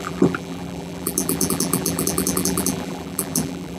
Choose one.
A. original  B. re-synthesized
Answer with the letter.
B